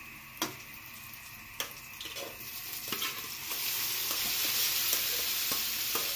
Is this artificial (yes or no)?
no